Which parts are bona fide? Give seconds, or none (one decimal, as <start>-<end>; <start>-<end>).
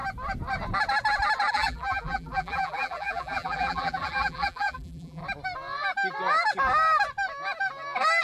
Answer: 0.0-1.5; 5.2-8.2